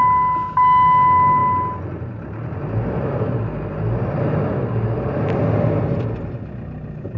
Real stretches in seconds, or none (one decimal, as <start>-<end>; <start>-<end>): 0.0-7.2